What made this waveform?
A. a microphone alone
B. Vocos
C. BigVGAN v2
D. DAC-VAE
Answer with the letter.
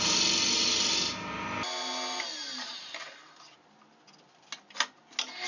A